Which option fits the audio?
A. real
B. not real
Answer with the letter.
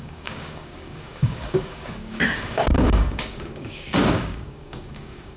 B